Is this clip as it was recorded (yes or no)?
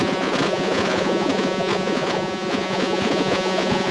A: no